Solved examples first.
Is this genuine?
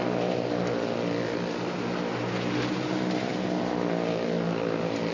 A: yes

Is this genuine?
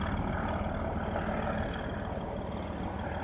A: yes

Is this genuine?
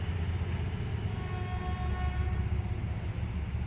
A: yes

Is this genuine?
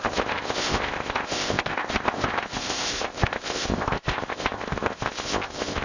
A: no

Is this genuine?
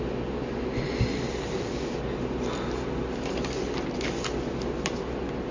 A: yes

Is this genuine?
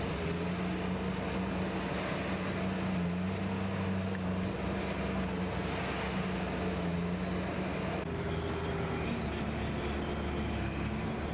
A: yes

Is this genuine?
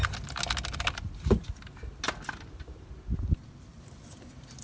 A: yes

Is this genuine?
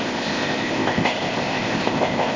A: no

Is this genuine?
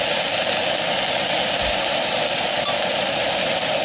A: yes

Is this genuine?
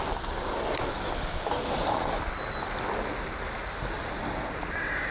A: yes